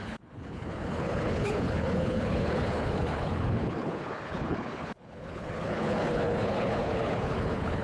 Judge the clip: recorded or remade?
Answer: remade